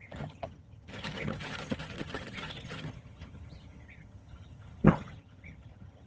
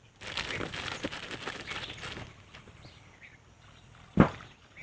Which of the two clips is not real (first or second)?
first